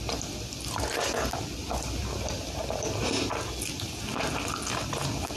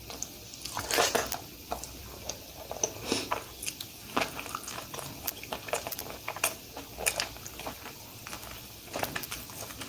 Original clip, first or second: second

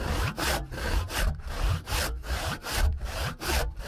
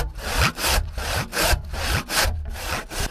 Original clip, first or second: second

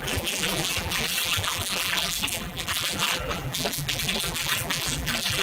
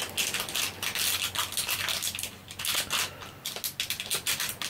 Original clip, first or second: second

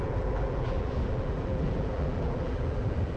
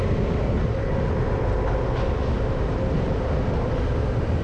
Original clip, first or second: second